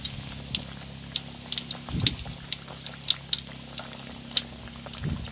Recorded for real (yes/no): yes